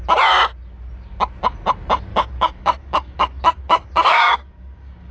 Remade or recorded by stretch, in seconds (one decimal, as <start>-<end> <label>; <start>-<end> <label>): 0.0-2.1 recorded; 2.1-5.1 remade